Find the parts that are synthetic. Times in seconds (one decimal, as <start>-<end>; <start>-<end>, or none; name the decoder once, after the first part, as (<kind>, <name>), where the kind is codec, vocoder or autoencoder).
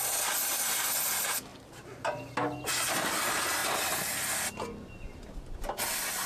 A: 1.5-2.3 (vocoder, BigVGAN v2)